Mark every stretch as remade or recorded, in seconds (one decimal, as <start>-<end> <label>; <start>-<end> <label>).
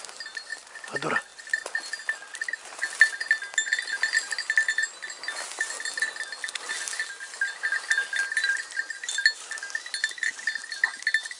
0.0-11.4 recorded